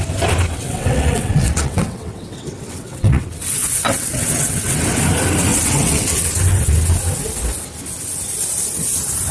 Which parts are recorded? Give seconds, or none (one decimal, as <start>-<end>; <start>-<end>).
0.0-0.5; 5.0-5.5; 6.3-9.3

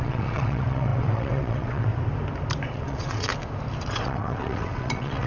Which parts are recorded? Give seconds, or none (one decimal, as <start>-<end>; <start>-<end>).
1.9-2.7; 3.3-3.9